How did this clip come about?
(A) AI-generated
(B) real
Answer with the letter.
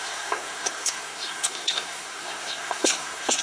A